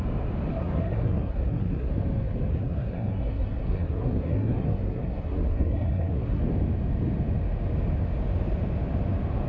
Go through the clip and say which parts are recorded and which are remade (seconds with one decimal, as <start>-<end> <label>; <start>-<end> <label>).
0.0-0.5 recorded; 0.5-1.9 remade; 1.9-2.5 recorded; 2.5-6.4 remade; 6.4-9.5 recorded